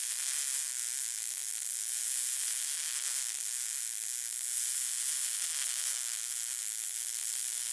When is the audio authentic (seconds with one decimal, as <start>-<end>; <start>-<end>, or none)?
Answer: 0.0-7.7